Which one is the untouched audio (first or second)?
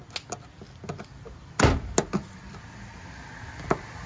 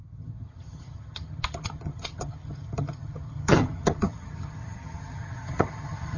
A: first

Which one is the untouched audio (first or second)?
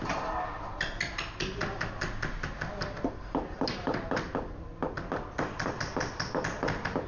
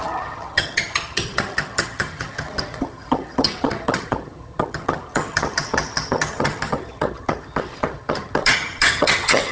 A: first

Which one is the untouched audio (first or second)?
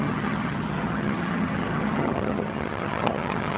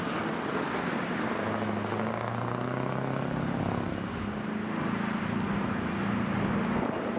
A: second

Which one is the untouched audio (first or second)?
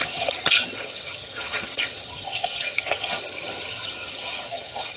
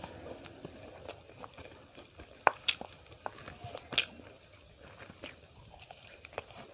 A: second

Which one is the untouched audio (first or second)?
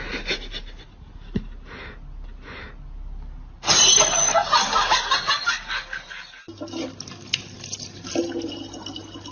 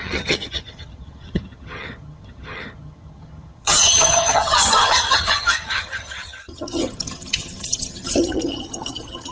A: first